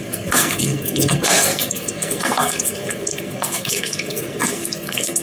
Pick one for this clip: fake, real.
fake